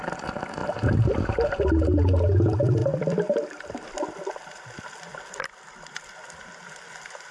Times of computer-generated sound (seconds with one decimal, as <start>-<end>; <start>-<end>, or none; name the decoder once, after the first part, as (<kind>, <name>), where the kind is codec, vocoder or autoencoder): 0.6-1.6 (vocoder, BigVGAN v2); 2.8-4.3